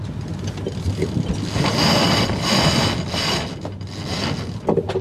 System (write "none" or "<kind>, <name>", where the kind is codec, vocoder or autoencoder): none